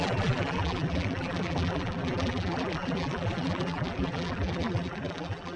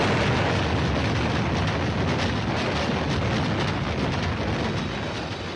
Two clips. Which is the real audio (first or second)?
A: second